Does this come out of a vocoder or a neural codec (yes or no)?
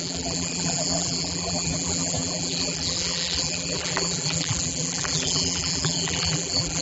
yes